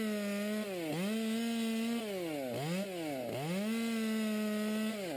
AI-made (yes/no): no